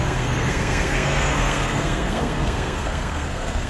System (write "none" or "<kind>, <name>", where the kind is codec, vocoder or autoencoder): codec, SNAC